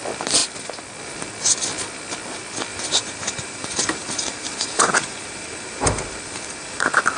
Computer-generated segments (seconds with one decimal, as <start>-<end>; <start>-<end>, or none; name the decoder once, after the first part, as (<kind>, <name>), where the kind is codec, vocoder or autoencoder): 2.7-6.8 (vocoder, BigVGAN v2)